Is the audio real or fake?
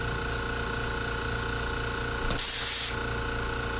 real